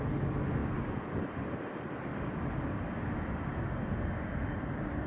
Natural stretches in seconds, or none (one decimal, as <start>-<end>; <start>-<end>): 0.0-2.1; 2.8-5.1